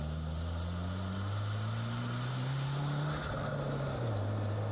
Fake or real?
real